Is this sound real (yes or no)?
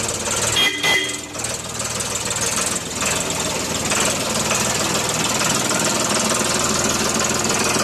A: yes